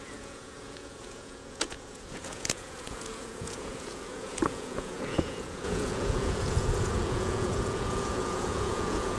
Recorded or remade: remade